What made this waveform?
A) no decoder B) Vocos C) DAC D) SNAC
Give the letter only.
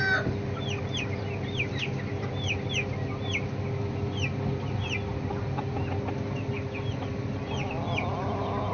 A